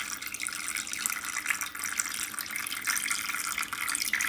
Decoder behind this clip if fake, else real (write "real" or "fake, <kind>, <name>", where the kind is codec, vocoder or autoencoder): real